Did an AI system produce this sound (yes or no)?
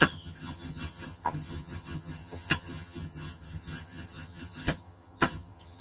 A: yes